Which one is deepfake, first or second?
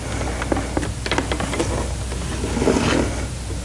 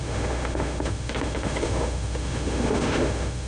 second